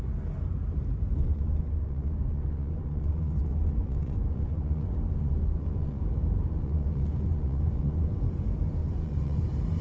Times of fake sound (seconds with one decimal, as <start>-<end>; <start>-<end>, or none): 1.2-6.0; 6.4-8.1; 8.8-9.4